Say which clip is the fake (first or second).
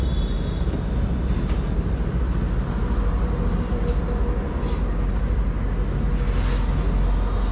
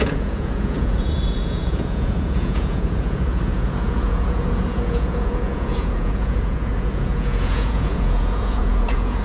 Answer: second